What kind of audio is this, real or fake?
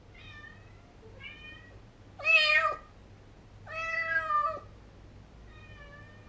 real